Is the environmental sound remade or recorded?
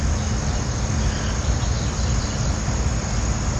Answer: recorded